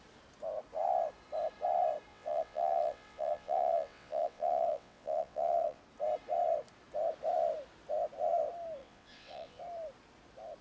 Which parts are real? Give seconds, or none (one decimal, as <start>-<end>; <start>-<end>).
0.0-2.1; 5.8-8.8; 9.6-10.6